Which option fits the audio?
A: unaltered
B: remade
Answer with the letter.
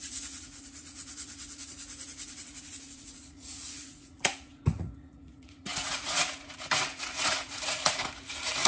B